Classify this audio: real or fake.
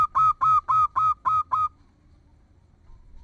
real